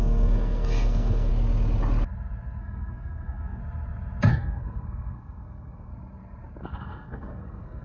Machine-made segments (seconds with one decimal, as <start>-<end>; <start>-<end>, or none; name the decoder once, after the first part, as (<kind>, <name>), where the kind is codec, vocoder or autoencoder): 0.0-1.3 (codec, SNAC); 2.6-3.6; 4.3-5.9; 6.6-7.8